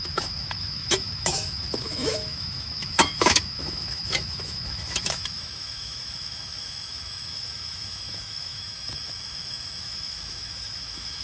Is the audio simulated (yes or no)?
yes